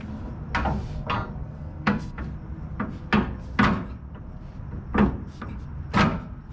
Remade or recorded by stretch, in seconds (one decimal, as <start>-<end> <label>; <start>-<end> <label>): 0.0-1.4 recorded; 1.4-2.2 remade; 2.2-6.5 recorded